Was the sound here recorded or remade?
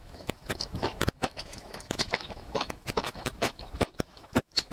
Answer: remade